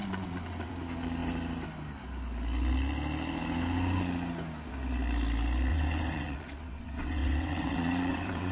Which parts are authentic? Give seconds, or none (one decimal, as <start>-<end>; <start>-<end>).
0.7-5.7